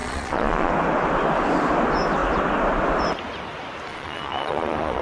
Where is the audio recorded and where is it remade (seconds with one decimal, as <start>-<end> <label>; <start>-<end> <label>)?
0.0-0.7 remade; 0.7-3.9 recorded; 3.9-5.0 remade